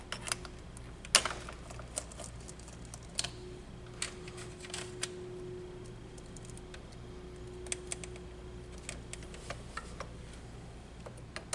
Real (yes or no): yes